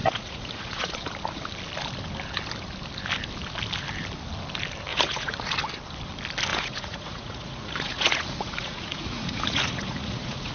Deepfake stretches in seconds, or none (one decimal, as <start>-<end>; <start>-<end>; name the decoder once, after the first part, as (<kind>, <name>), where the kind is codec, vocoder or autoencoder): 0.0-0.9 (vocoder, Vocos); 4.9-5.5; 6.5-10.5